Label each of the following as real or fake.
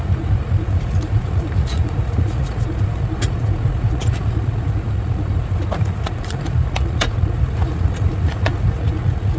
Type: fake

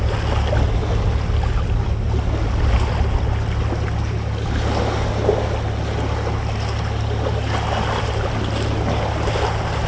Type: real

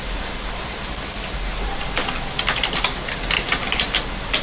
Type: real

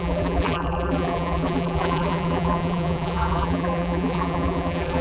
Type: fake